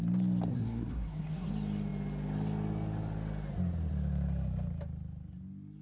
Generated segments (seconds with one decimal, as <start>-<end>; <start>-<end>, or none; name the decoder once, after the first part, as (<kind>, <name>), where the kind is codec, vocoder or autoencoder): 0.5-1.5 (codec, SNAC)